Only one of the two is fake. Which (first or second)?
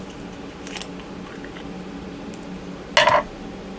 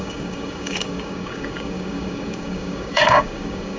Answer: second